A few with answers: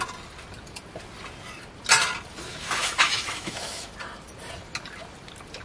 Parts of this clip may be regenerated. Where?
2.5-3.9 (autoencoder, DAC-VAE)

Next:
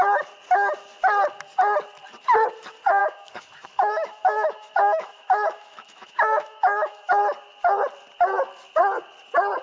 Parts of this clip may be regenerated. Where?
3.0-7.1 (autoencoder, DAC-VAE)

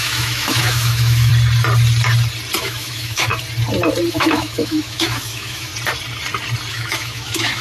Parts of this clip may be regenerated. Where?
0.0-1.3 (autoencoder, DAC-VAE); 2.6-3.3; 4.1-5.7; 6.7-7.6

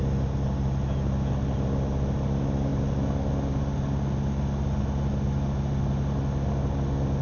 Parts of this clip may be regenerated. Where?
none

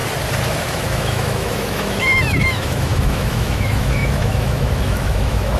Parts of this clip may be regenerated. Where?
0.6-5.6 (autoencoder, DAC-VAE)